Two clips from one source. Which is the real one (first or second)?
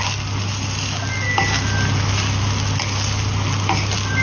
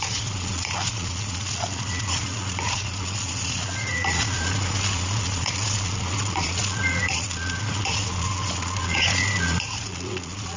first